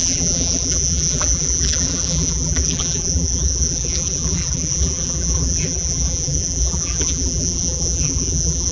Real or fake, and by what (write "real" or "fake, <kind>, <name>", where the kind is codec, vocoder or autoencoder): fake, vocoder, BigVGAN v2